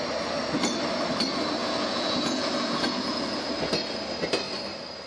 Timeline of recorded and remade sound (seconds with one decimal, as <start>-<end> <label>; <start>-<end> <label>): 0.0-1.6 recorded; 1.6-3.5 remade; 3.5-5.1 recorded